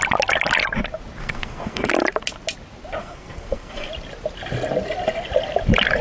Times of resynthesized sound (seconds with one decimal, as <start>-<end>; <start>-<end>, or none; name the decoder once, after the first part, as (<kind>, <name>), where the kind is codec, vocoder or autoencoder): 1.2-1.9 (codec, SNAC); 3.0-3.9